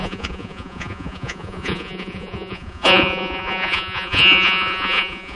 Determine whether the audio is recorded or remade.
remade